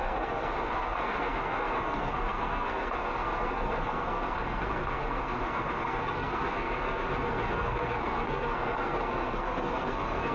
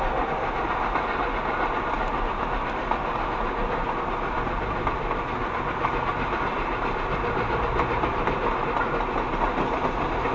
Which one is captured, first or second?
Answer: second